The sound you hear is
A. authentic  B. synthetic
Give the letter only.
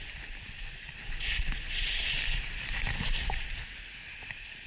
A